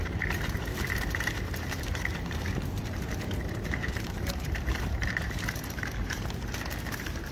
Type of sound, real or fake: fake